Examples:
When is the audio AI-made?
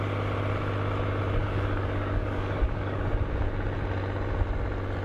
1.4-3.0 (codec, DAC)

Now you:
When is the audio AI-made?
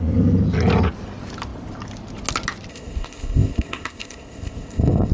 2.7-5.1 (codec, ZipCodec)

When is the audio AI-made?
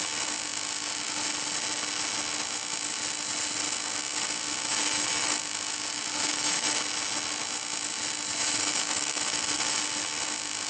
4.7-5.4 (autoencoder, DAC-VAE); 6.2-6.8; 8.4-9.8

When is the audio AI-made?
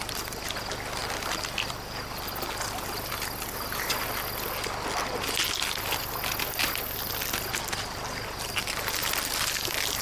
none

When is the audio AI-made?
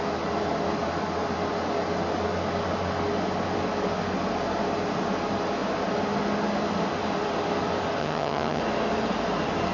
8.0-8.6 (vocoder, HiFi-GAN)